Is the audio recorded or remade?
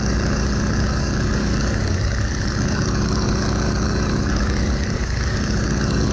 remade